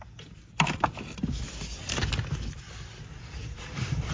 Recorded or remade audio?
recorded